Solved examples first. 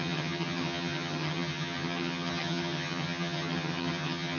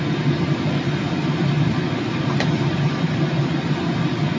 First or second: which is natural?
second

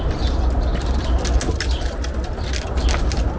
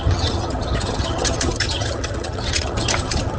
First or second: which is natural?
first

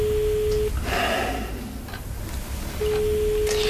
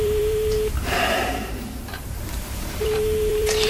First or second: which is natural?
first